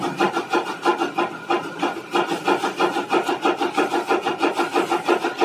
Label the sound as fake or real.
real